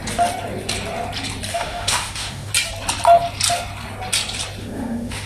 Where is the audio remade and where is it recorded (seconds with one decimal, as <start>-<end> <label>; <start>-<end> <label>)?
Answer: 0.0-1.5 recorded; 1.5-2.5 remade; 2.5-4.6 recorded; 4.6-5.3 remade